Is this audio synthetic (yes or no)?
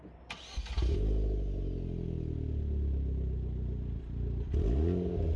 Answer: no